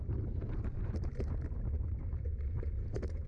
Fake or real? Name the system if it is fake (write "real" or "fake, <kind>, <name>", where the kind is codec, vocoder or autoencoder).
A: fake, vocoder, BigVGAN v2